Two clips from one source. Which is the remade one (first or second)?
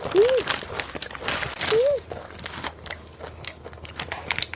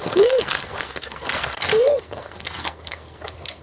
second